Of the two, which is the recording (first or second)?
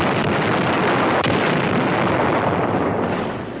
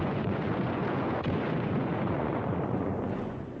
first